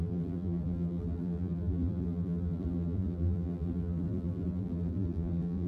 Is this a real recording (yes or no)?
no